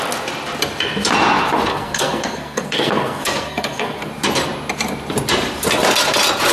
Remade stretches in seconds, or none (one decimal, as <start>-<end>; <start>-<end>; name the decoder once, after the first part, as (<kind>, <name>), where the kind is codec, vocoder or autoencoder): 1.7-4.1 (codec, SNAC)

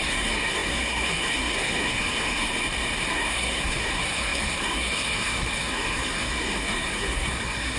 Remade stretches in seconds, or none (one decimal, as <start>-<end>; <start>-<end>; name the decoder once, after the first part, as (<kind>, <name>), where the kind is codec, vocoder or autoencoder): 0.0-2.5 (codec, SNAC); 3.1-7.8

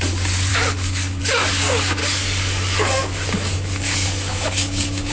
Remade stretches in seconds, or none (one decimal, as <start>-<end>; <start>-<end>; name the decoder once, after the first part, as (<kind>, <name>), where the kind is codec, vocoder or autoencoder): 0.5-1.2 (codec, DAC); 2.0-5.1